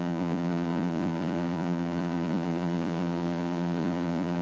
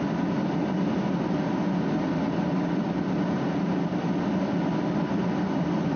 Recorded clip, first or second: second